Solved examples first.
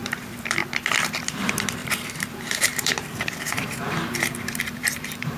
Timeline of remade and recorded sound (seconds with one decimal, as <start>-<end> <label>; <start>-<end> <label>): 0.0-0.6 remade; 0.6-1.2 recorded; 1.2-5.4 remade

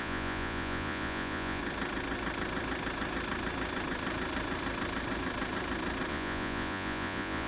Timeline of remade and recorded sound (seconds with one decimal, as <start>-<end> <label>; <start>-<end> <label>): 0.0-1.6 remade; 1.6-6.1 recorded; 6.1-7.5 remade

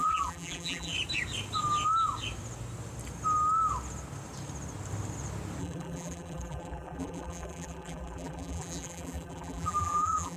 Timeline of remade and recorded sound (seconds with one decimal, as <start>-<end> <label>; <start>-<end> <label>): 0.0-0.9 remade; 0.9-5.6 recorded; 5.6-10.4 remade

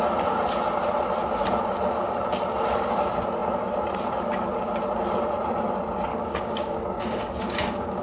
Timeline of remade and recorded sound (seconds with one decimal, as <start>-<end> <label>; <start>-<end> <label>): 0.0-6.1 recorded; 6.1-8.0 remade